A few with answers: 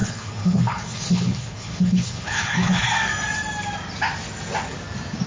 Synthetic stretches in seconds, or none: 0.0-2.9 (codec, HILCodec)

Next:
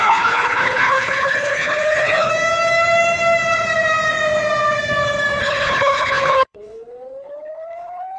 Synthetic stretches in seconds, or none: 0.0-2.3 (codec, HILCodec); 5.4-8.2

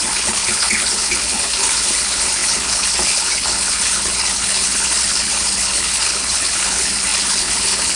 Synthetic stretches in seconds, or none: 0.0-8.0 (codec, HILCodec)

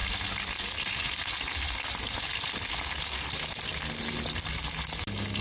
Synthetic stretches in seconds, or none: none

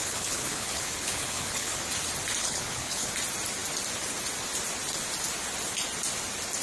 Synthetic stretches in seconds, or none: 0.0-1.8 (codec, HILCodec); 2.4-3.1

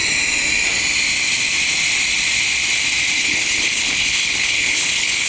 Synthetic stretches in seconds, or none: 3.2-5.3 (codec, HILCodec)

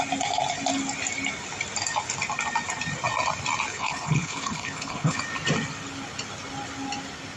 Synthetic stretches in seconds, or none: 3.7-5.2 (codec, HILCodec)